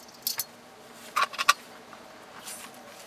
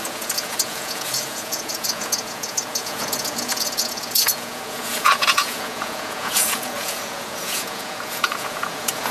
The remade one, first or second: second